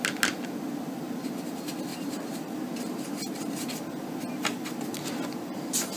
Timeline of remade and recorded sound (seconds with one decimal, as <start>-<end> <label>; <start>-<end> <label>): 0.0-1.9 recorded; 1.9-3.7 remade; 3.7-6.0 recorded